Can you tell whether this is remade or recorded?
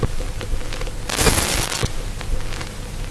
recorded